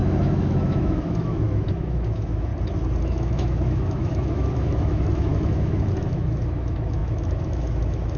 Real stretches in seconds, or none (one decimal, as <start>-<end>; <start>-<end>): 2.5-3.0